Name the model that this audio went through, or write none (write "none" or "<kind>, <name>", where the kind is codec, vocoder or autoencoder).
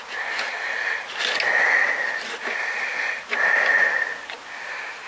none